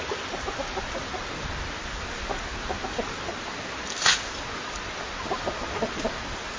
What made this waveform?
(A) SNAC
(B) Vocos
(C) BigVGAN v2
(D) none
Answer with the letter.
D